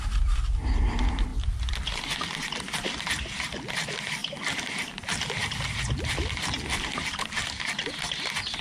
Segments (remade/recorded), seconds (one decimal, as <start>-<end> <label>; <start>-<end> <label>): 0.0-8.6 recorded